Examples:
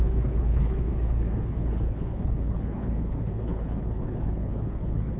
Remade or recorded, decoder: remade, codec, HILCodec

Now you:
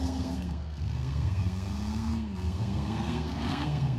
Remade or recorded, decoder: remade, codec, SNAC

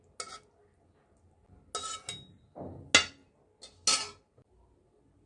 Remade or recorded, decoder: recorded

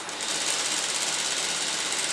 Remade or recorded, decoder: recorded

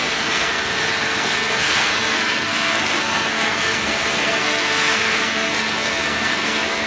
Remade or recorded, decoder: remade, codec, SNAC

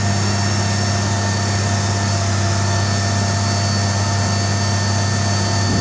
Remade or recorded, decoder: recorded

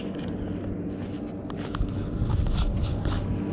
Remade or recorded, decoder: recorded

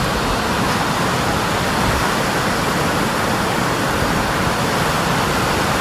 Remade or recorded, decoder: recorded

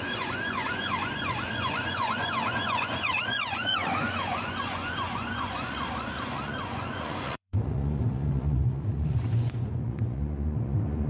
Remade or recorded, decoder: remade, vocoder, Vocos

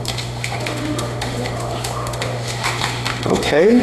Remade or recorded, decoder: remade, autoencoder, DAC-VAE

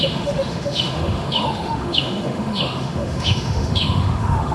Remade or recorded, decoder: remade, autoencoder, DAC-VAE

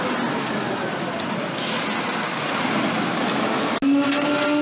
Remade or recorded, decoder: recorded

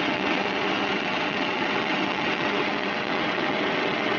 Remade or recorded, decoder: remade, vocoder, WaveNeXt